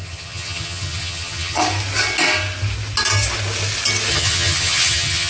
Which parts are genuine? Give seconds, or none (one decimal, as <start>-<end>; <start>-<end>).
1.6-4.1